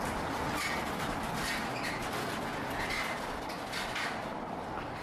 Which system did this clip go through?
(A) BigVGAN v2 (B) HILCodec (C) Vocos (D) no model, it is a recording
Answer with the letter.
D